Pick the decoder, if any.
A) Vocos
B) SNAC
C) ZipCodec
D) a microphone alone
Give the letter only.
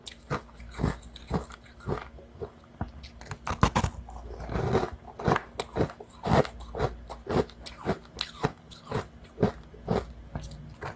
D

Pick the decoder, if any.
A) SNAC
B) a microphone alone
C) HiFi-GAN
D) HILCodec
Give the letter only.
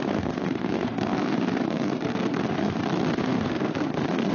A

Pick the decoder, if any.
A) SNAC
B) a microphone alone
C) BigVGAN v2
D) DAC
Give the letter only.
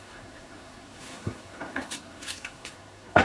A